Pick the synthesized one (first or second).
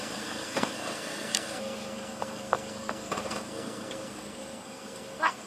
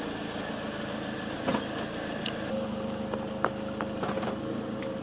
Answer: first